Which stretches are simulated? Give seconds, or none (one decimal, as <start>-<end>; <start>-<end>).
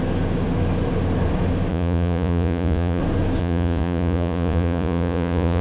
1.7-3.0; 3.4-5.6